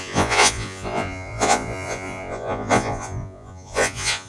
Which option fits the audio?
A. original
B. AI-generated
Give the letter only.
B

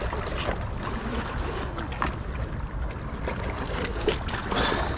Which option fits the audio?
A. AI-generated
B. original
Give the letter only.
B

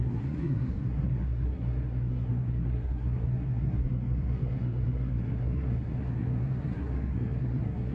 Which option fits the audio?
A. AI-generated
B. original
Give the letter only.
A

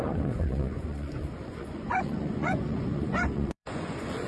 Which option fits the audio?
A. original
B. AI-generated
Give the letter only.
B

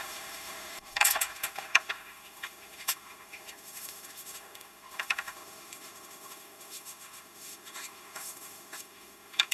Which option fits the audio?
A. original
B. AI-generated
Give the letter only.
B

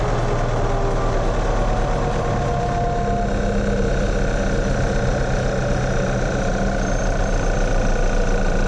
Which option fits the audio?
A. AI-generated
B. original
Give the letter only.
B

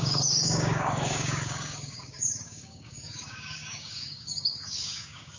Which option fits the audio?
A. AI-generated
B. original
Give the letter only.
A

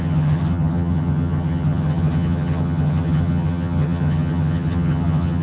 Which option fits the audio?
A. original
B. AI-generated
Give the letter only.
B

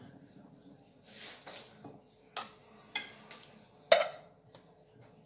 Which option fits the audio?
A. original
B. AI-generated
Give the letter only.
A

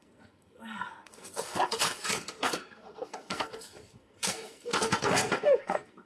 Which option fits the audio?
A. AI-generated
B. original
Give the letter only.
A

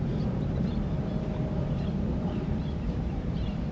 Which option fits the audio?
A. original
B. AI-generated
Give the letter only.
B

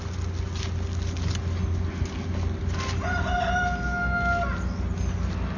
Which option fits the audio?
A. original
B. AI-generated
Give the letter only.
A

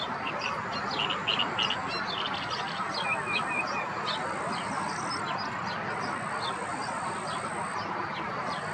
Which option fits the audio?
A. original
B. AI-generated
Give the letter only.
A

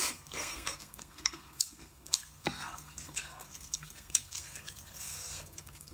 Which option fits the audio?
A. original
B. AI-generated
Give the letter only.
B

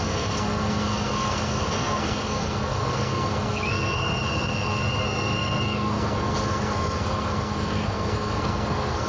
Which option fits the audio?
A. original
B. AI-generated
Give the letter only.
B